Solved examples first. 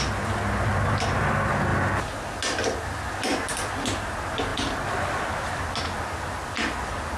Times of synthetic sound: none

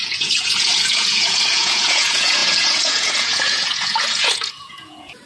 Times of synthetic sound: 0.0-5.3 (vocoder, Vocos)

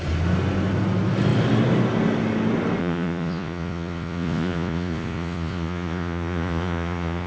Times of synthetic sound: 2.8-7.3 (vocoder, Vocos)

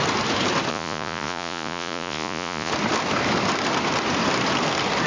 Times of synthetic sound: 0.7-2.7 (vocoder, Vocos)

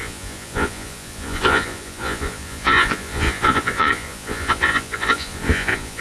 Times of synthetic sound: 0.0-6.0 (vocoder, Vocos)

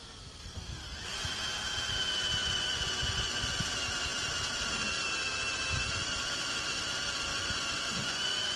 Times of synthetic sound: 2.4-3.5 (vocoder, Vocos); 7.3-8.6